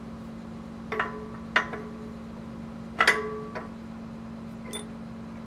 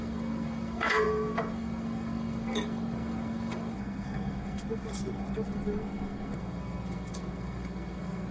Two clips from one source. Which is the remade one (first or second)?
second